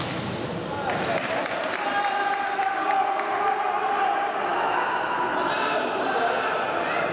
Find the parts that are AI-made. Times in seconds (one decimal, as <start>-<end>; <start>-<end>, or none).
none

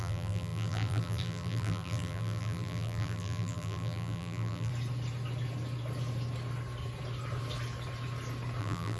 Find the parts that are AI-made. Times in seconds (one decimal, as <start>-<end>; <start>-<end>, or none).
0.0-4.7; 8.6-9.0

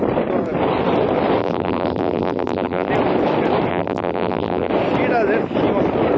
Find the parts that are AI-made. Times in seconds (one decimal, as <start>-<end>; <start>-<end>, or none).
1.4-2.9; 3.7-4.7

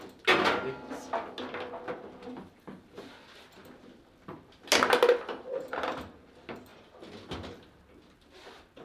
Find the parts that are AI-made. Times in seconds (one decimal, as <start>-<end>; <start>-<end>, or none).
none

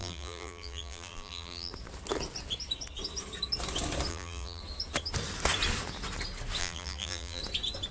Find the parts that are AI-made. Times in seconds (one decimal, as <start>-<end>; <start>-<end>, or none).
0.0-1.7; 4.1-4.6; 6.6-7.4